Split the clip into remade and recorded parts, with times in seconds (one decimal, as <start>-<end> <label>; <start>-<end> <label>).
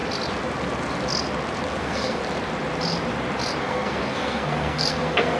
0.0-1.8 recorded; 1.8-2.2 remade; 2.2-3.6 recorded; 3.6-5.4 remade